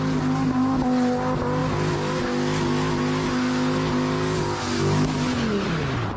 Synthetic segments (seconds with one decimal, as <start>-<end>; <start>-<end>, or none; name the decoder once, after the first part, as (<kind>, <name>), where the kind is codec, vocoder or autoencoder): none